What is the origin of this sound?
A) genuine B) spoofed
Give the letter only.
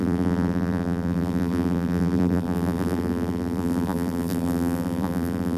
B